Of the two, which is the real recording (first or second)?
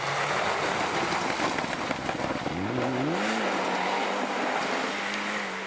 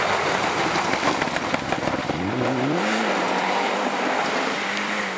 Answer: first